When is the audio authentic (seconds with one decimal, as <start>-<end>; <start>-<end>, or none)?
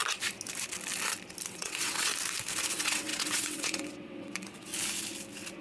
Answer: 0.0-1.5; 2.1-2.7; 4.7-5.6